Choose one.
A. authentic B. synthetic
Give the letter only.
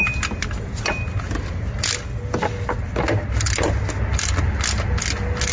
A